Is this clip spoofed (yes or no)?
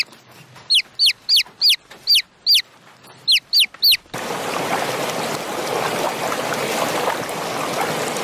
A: no